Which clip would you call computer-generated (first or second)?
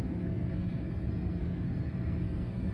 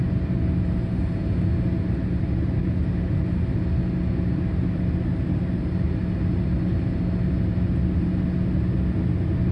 first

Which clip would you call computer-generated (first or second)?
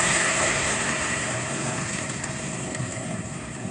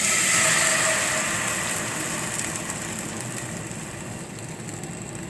first